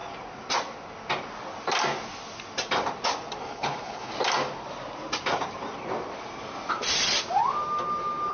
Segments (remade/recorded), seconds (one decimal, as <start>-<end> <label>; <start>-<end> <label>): 0.0-3.4 recorded; 3.4-4.1 remade; 4.1-8.3 recorded